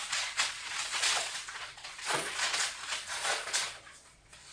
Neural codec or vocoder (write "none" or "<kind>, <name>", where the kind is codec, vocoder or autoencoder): vocoder, Vocos